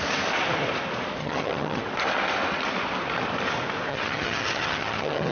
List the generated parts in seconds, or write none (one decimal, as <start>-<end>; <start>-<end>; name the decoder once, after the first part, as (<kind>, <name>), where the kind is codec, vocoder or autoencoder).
1.2-1.8 (vocoder, HiFi-GAN); 3.9-5.3